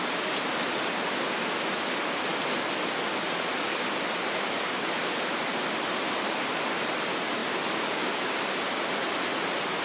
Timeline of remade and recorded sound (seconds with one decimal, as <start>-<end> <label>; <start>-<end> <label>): 0.0-9.8 recorded